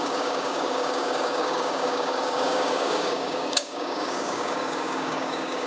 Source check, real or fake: fake